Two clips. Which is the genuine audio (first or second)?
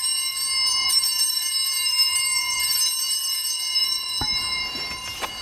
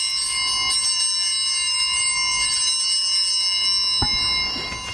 second